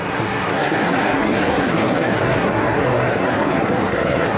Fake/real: fake